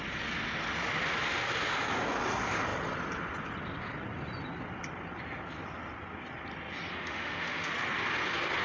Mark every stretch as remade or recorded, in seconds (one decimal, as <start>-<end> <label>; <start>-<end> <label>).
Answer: 0.0-6.9 recorded; 6.9-7.7 remade; 7.7-8.6 recorded